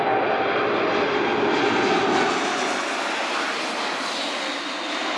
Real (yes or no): yes